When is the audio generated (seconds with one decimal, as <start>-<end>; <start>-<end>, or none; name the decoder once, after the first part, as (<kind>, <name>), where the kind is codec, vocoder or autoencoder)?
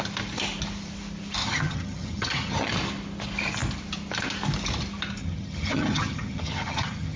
1.4-2.7 (vocoder, HiFi-GAN); 5.2-7.2